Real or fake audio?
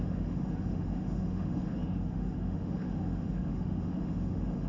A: fake